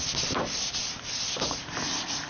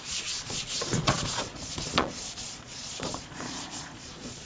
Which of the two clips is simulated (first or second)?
second